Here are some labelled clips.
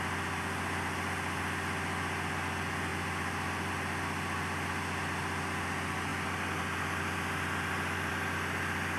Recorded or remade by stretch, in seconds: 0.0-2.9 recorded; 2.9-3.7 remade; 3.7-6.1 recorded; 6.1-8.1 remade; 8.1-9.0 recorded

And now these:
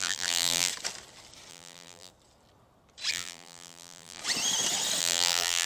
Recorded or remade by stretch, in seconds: 0.0-0.7 remade; 0.7-1.5 recorded; 1.5-2.1 remade; 2.1-3.1 recorded; 3.1-4.2 remade; 4.2-5.0 recorded; 5.0-5.7 remade